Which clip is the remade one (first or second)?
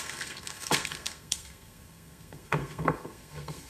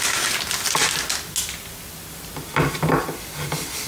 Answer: first